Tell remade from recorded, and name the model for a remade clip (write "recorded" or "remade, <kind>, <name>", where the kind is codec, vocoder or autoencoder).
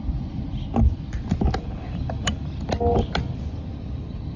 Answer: recorded